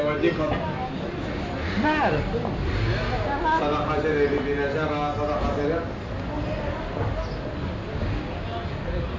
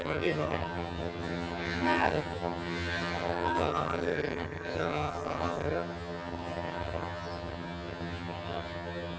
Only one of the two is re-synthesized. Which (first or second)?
second